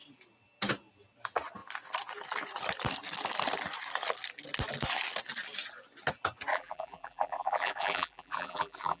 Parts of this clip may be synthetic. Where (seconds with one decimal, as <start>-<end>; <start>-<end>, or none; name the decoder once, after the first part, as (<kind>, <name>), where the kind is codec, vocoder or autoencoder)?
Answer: 6.5-9.0 (vocoder, BigVGAN v2)